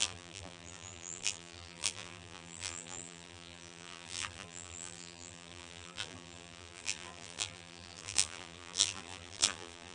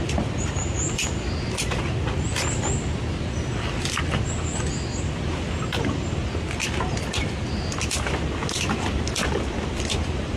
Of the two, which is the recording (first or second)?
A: second